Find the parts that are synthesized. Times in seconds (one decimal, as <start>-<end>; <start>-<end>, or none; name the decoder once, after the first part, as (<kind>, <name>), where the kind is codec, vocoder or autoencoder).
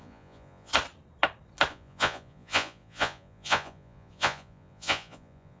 0.0-0.7 (vocoder, Vocos); 1.7-5.6